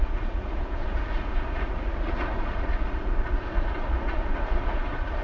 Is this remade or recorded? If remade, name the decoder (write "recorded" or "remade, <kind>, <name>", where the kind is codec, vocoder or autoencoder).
remade, vocoder, Vocos